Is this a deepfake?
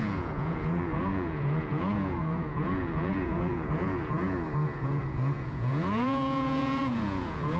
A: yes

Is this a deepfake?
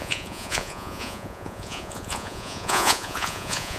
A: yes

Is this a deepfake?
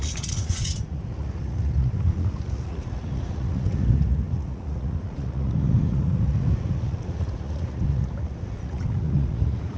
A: yes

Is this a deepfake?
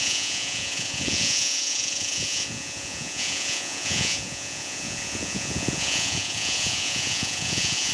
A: yes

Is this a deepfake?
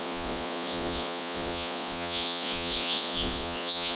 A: yes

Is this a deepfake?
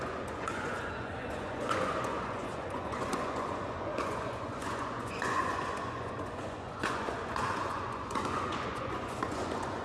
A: yes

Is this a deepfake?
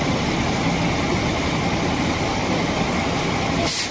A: no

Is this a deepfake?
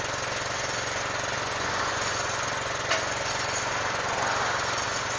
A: yes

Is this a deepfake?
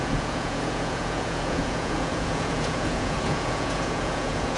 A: yes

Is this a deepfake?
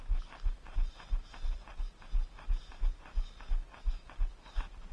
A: no